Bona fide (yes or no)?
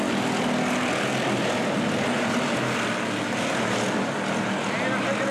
yes